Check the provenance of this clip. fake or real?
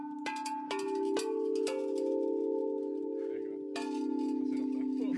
real